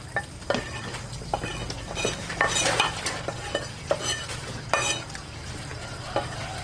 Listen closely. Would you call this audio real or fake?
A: real